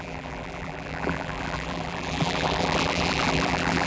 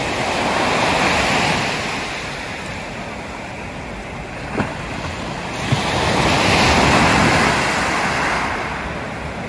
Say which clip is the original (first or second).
second